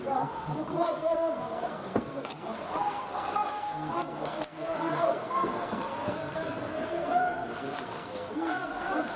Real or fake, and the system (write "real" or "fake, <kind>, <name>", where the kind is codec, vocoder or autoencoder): fake, codec, SNAC